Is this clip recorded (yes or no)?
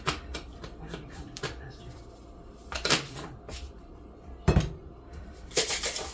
no